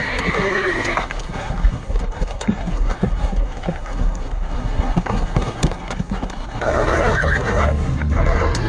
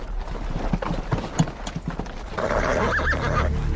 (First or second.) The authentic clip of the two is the second